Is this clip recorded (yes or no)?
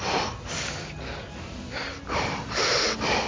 yes